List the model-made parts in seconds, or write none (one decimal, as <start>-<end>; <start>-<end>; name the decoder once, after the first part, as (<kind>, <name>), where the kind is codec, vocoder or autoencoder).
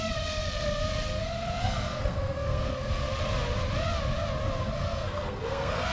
0.0-3.1 (codec, SNAC); 4.6-5.9